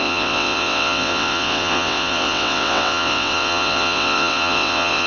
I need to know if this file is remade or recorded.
remade